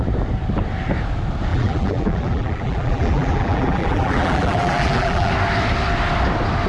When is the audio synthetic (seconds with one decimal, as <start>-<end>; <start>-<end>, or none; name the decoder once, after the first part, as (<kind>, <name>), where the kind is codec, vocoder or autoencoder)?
1.5-5.3 (vocoder, BigVGAN v2)